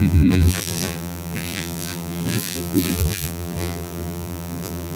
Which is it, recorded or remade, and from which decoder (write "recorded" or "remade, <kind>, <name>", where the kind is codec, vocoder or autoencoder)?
remade, vocoder, BigVGAN v2